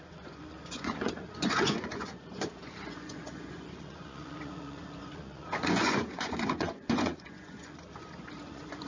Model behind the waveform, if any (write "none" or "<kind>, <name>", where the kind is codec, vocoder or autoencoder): vocoder, Vocos